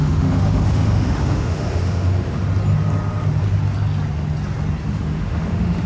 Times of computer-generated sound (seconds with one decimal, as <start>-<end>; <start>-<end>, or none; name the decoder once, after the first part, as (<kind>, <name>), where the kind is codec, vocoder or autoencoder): 0.0-2.5 (autoencoder, DAC-VAE); 4.9-5.9